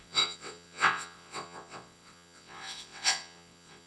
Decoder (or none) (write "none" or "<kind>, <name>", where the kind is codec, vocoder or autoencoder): vocoder, WaveNeXt